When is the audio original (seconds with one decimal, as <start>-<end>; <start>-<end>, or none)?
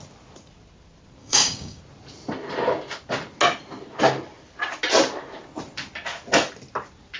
0.0-1.2; 1.8-7.2